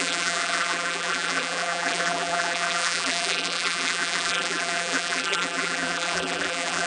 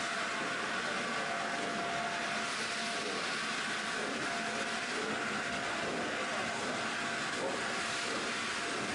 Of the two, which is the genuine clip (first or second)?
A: second